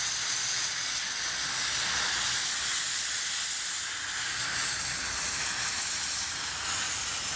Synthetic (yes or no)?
no